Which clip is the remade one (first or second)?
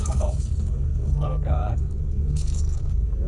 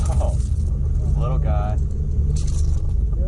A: first